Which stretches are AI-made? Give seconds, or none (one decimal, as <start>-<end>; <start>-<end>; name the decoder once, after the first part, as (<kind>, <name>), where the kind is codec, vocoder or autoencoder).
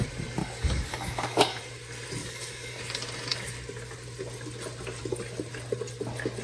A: 0.4-1.6 (codec, DAC); 2.2-2.8